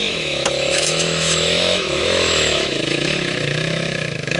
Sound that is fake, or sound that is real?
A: fake